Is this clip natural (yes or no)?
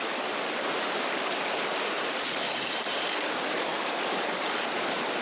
yes